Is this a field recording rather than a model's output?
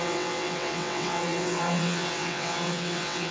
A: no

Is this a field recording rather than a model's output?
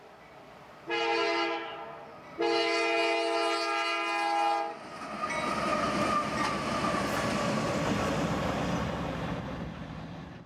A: yes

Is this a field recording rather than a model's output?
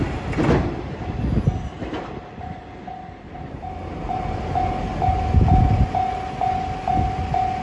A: yes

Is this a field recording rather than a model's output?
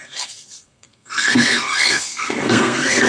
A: no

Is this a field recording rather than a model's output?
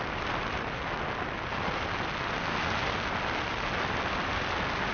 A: yes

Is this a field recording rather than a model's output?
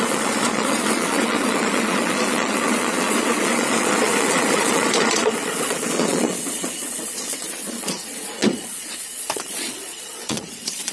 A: no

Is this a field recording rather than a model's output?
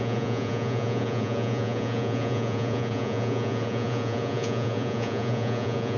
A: no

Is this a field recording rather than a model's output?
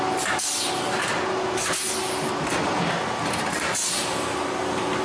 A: yes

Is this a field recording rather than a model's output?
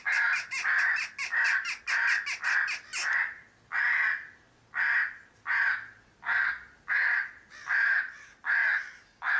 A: yes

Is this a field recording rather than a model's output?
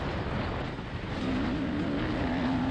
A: yes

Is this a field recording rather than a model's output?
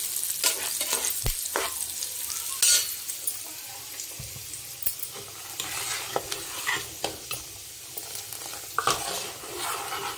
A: yes